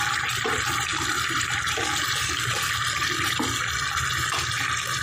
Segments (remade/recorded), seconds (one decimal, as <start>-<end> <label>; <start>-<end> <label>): 0.0-0.9 recorded; 0.9-3.3 remade; 3.3-5.0 recorded